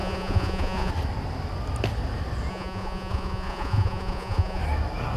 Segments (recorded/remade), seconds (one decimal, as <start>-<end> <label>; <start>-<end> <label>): 0.0-0.9 remade; 0.9-2.5 recorded; 2.5-4.6 remade; 4.6-5.2 recorded